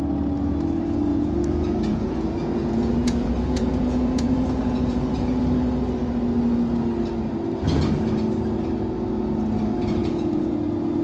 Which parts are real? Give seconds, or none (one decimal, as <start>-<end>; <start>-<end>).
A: 0.0-1.1; 5.4-10.0; 10.5-11.0